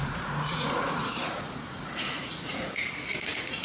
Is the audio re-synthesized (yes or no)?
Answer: yes